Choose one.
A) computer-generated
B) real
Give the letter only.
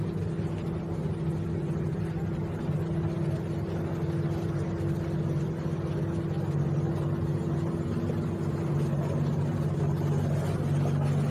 B